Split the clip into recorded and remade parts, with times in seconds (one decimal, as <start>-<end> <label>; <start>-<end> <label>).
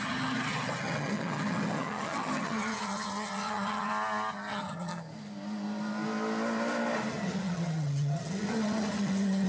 0.0-3.9 remade; 3.9-4.5 recorded; 4.5-4.9 remade; 4.9-7.1 recorded; 7.1-9.5 remade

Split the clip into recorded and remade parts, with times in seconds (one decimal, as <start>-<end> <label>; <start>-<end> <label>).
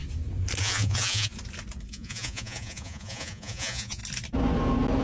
0.0-0.6 recorded; 0.6-1.3 remade; 1.3-1.9 recorded; 1.9-4.0 remade; 4.0-5.0 recorded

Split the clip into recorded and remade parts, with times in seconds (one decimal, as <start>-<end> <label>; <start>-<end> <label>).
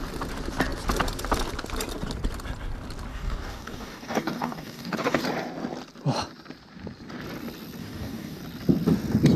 0.0-3.1 recorded; 3.1-5.2 remade; 5.2-7.8 recorded; 7.8-8.4 remade; 8.4-9.4 recorded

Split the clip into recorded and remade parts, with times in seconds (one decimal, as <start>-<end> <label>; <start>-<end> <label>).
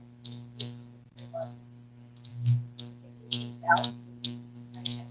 0.0-5.1 recorded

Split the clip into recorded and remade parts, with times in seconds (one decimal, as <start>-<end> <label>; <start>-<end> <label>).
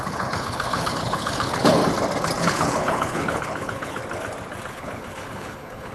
0.0-1.8 remade; 1.8-2.4 recorded; 2.4-4.0 remade; 4.0-4.7 recorded; 4.7-5.9 remade